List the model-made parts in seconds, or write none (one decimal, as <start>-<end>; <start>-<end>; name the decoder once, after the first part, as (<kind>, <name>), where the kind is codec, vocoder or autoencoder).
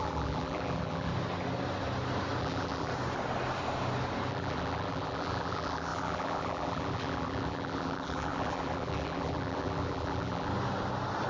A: 0.0-1.1 (vocoder, BigVGAN v2); 2.4-2.9; 4.3-10.5